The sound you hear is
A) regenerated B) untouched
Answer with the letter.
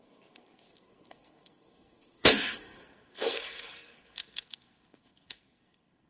A